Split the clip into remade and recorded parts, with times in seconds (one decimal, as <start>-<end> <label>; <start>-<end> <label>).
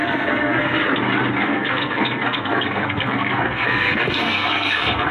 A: 0.0-0.8 remade; 0.8-1.4 recorded; 1.4-5.1 remade